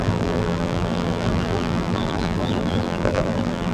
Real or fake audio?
fake